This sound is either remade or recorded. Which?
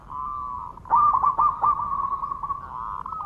recorded